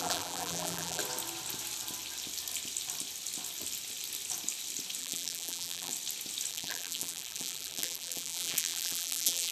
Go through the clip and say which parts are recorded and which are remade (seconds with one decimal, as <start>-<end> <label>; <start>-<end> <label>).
0.0-1.0 remade; 1.0-5.0 recorded; 5.0-5.9 remade; 5.9-6.5 recorded; 6.5-9.5 remade